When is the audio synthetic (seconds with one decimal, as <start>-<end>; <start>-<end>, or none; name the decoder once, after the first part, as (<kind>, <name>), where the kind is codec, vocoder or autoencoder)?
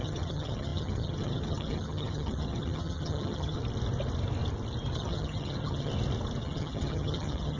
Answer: 0.0-3.6 (vocoder, HiFi-GAN); 4.9-5.9; 6.4-7.6